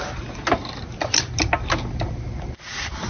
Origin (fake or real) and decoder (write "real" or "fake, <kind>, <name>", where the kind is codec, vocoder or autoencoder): real